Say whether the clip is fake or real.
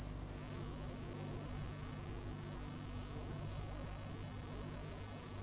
fake